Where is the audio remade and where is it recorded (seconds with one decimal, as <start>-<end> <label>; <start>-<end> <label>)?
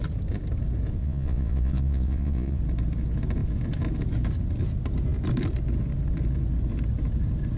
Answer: 0.0-1.0 recorded; 1.0-2.6 remade; 2.6-7.6 recorded